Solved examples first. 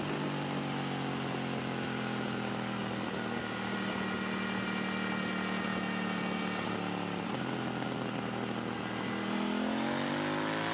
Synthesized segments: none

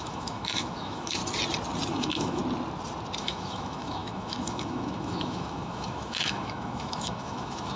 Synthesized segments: 0.0-1.2 (autoencoder, DAC-VAE); 1.9-2.4; 3.2-7.8

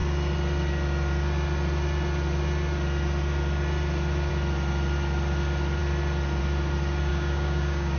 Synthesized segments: 7.1-8.0 (codec, DAC)

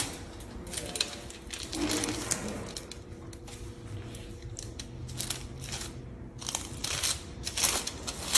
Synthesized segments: none

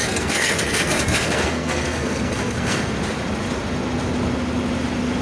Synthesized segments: 0.0-2.9 (codec, SNAC)